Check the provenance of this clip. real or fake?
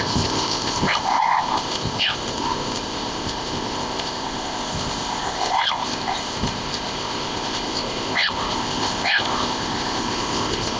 fake